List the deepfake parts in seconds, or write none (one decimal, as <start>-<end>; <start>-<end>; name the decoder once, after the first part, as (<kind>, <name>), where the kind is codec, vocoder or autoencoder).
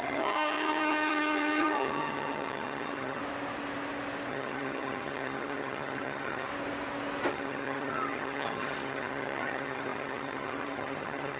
0.0-3.2 (vocoder, HiFi-GAN); 4.3-6.5; 7.3-11.4